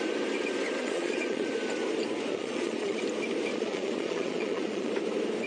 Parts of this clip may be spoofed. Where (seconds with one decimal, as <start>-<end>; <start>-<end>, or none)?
0.8-1.5; 2.3-3.0; 3.5-4.9